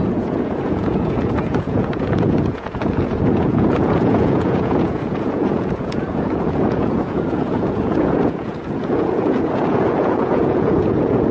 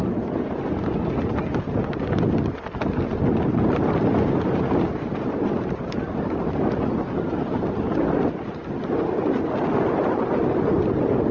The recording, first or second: second